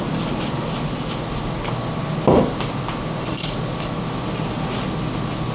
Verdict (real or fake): real